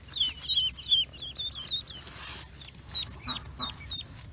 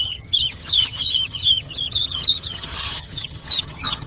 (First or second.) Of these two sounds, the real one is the first